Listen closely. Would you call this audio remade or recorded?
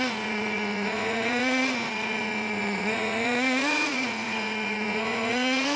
remade